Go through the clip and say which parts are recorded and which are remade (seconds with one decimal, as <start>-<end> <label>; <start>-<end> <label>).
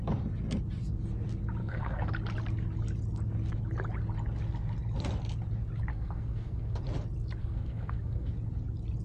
0.0-1.6 recorded; 1.6-2.1 remade; 2.1-5.9 recorded; 5.9-6.8 remade; 6.8-7.4 recorded; 7.4-8.3 remade; 8.3-9.0 recorded